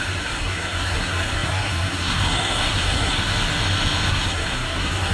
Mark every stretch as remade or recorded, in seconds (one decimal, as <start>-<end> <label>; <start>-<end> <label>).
0.0-3.3 remade; 3.3-4.1 recorded; 4.1-5.1 remade